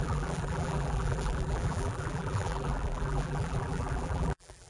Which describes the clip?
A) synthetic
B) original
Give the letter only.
A